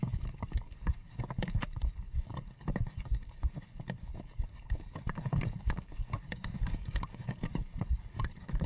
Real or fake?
fake